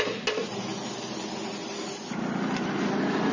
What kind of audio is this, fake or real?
real